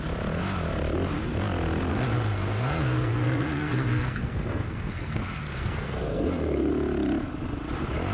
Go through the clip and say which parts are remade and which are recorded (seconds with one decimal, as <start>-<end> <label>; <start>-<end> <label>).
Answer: 0.0-1.9 recorded; 1.9-6.7 remade; 6.7-8.1 recorded